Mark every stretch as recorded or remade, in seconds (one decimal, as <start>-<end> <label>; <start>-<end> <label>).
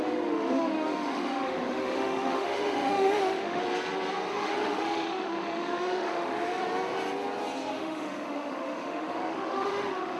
0.0-3.6 remade; 3.6-4.3 recorded; 4.3-6.6 remade; 6.6-7.7 recorded; 7.7-10.2 remade